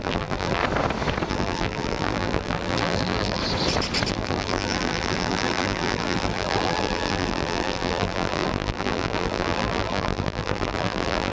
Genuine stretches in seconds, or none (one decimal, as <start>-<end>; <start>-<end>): 0.6-1.3; 3.4-4.1